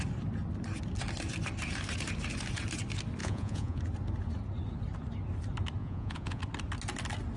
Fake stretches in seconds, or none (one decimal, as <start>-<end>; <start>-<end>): 3.2-3.8; 5.8-6.4

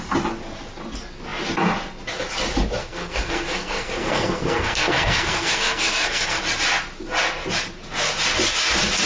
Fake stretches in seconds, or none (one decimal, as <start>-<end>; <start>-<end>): 2.8-6.4

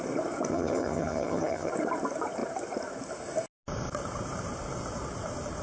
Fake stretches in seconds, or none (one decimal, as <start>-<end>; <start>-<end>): 0.5-1.7

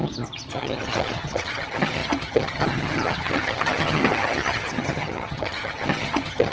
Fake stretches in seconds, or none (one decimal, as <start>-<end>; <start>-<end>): 0.0-6.5

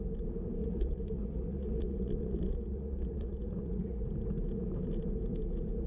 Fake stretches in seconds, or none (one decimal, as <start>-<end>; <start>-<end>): 0.6-4.0